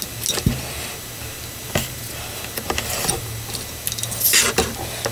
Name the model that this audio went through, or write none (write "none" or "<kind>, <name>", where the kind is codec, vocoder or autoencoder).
none